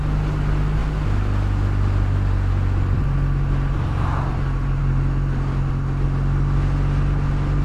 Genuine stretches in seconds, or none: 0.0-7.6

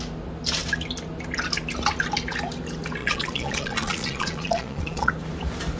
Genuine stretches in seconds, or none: 0.0-3.0; 5.1-5.8

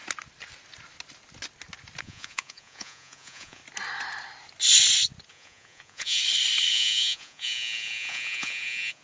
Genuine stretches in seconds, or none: 0.0-2.0; 3.6-5.3; 6.2-6.7

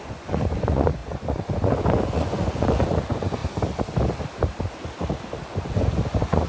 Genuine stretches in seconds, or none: 3.4-5.5

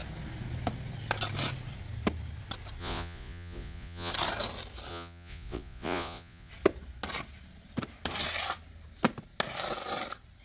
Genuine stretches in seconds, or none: 0.0-2.8; 4.1-4.9; 6.5-10.4

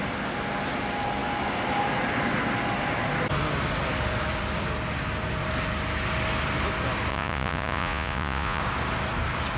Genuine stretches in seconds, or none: 0.0-7.1; 8.6-9.6

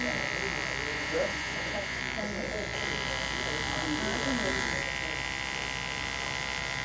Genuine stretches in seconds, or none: 0.0-0.9; 2.0-6.8

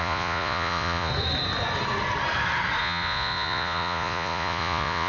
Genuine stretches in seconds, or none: 1.1-2.8